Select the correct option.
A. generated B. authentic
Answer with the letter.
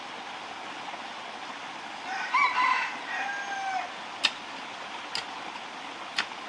B